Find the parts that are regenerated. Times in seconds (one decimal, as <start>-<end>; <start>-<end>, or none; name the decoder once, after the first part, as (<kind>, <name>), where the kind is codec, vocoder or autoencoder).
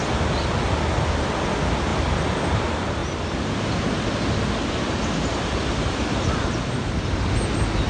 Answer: none